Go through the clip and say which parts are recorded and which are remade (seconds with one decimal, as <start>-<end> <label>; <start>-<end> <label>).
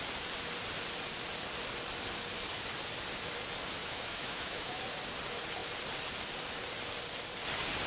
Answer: 0.0-3.8 recorded; 3.8-4.8 remade; 4.8-7.9 recorded